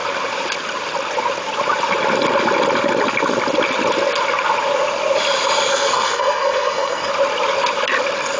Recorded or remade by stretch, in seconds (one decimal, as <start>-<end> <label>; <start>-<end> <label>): 0.0-5.7 recorded; 5.7-7.1 remade; 7.1-8.4 recorded